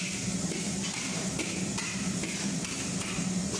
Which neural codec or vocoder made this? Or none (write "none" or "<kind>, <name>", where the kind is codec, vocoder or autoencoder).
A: vocoder, BigVGAN v2